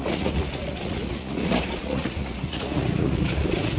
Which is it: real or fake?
fake